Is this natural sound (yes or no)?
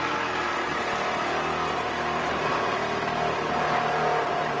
yes